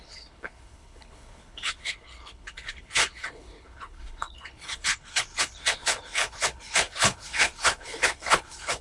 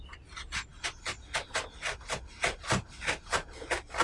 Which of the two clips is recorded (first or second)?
second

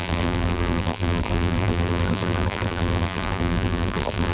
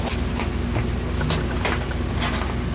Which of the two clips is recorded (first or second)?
second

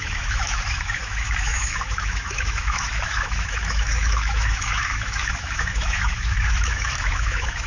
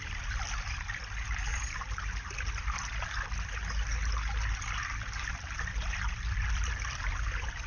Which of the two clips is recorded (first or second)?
second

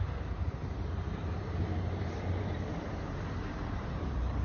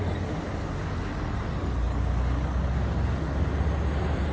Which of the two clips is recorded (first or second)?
second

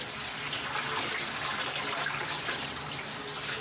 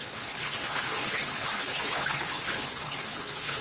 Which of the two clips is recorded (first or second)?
first